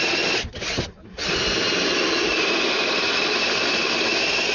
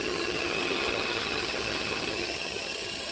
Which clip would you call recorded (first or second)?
first